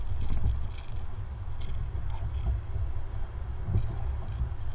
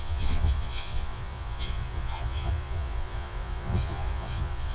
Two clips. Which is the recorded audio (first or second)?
first